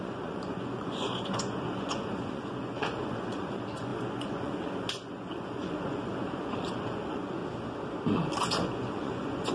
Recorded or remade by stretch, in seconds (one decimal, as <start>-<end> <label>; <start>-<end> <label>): 0.0-7.4 remade; 7.4-8.5 recorded; 8.5-9.5 remade